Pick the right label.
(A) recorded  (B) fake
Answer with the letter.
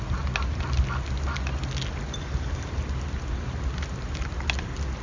A